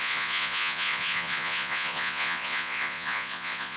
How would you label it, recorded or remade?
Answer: remade